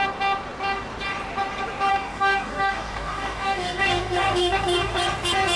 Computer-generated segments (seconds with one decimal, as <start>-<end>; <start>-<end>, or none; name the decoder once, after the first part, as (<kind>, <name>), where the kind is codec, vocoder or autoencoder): 1.9-5.0 (codec, DAC)